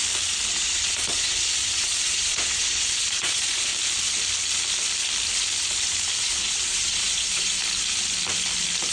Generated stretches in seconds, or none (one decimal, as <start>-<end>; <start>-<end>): 0.5-3.7; 6.2-7.6